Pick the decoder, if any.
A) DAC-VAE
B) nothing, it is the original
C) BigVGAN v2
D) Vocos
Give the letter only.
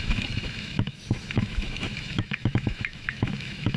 A